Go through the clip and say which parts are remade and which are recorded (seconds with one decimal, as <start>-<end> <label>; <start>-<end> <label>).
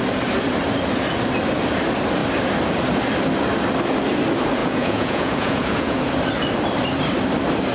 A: 0.0-4.6 recorded; 4.6-6.1 remade; 6.1-7.7 recorded